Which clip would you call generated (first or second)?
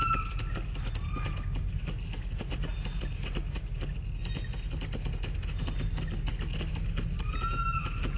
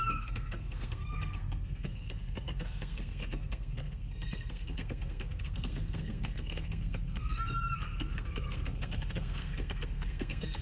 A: second